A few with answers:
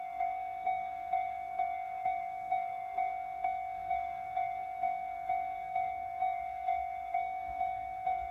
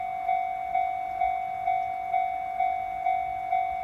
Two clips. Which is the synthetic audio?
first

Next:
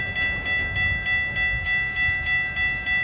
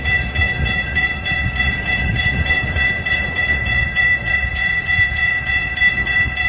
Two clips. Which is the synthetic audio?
second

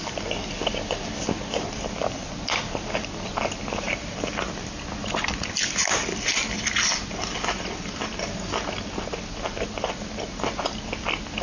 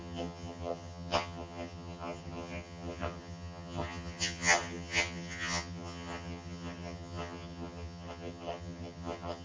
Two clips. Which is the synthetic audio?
second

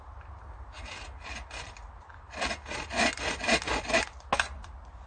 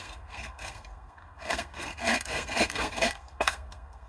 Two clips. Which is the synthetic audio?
second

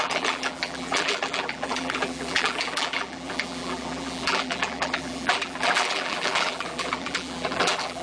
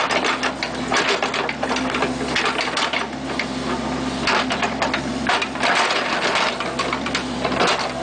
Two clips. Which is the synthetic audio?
first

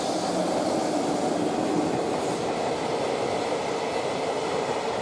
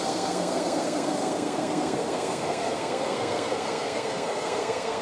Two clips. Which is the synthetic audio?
second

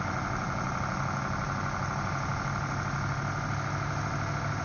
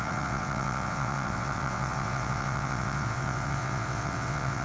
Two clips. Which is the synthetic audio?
second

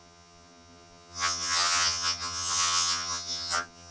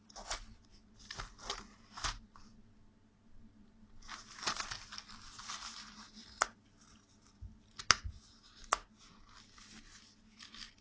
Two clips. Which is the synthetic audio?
first